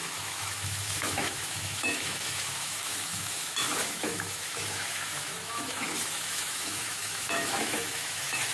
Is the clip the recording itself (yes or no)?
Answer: no